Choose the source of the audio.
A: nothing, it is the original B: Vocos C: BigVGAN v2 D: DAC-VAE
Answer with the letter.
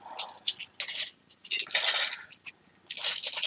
A